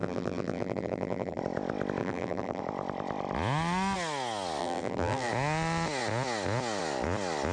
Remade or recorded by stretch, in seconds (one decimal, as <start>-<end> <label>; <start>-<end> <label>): 0.0-1.4 remade; 1.4-2.0 recorded; 2.0-2.6 remade; 2.6-4.6 recorded; 4.6-5.3 remade; 5.3-7.5 recorded